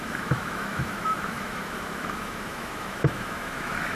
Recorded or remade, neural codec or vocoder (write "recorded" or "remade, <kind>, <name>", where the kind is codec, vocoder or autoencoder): remade, autoencoder, DAC-VAE